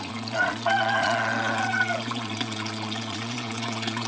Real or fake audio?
fake